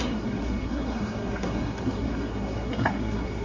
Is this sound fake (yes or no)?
yes